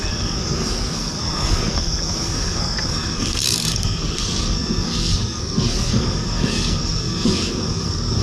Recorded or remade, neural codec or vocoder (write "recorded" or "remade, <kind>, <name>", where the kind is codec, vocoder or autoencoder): remade, codec, SNAC